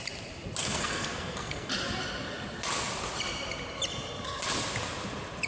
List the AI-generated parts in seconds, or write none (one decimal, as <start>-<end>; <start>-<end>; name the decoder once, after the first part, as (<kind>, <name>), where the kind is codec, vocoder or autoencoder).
0.6-1.7 (codec, SNAC)